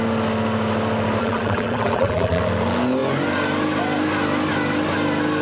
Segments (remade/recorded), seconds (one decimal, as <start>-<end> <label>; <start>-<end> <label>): 0.0-1.2 recorded; 1.2-2.4 remade; 2.4-5.4 recorded